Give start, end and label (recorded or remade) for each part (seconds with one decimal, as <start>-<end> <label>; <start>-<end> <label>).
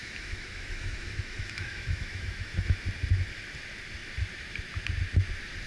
0.0-2.8 remade; 2.8-5.7 recorded